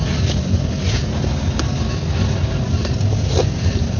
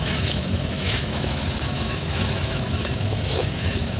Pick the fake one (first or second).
second